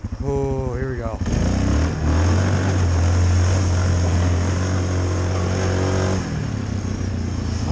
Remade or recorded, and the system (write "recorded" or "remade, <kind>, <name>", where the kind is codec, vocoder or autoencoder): recorded